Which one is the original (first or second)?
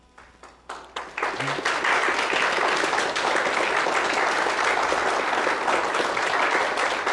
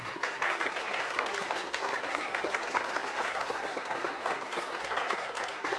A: first